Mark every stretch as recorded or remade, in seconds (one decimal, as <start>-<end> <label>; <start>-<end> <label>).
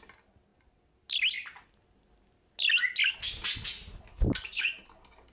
0.0-4.1 recorded; 4.1-4.6 remade; 4.6-5.3 recorded